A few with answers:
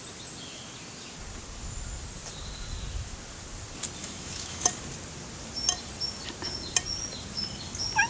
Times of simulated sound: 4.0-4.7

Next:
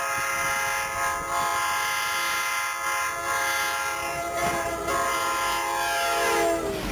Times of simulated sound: none

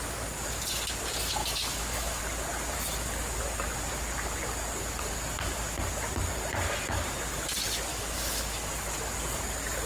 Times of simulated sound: 1.4-2.2; 7.9-8.7

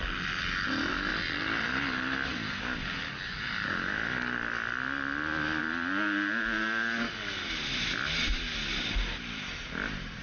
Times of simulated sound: none

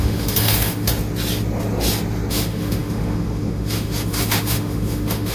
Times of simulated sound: 0.0-0.9; 2.3-5.3

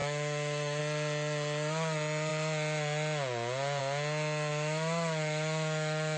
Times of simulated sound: 0.0-0.8; 4.5-6.2

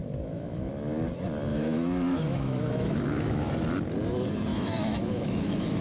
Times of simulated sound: 0.0-0.7; 1.5-3.5; 4.5-5.8

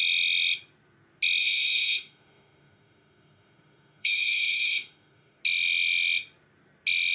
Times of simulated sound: 1.4-5.4